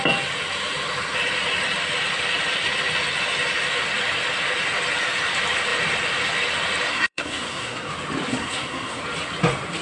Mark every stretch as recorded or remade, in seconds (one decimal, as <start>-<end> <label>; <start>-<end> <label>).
0.0-6.9 recorded; 6.9-7.9 remade; 7.9-8.3 recorded; 8.3-9.0 remade; 9.0-9.8 recorded